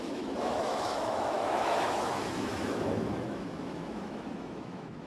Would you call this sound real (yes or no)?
no